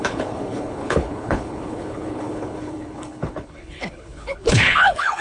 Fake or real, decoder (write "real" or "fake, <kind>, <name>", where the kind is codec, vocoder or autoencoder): fake, codec, HILCodec